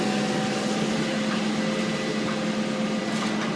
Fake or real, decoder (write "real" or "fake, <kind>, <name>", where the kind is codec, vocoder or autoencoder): real